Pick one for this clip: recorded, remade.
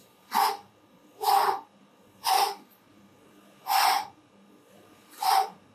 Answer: remade